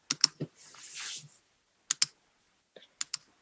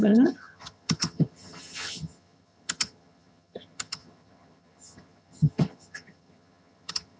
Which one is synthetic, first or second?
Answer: second